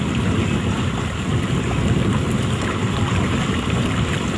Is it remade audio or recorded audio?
remade